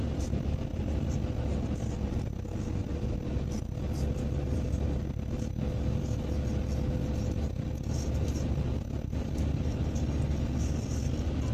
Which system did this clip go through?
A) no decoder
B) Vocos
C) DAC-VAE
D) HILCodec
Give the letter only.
A